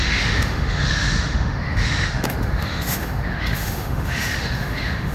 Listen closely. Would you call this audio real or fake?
fake